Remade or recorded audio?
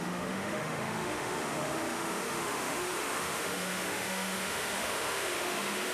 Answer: remade